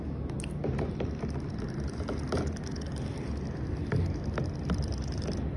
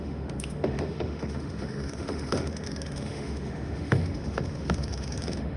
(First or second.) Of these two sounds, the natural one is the first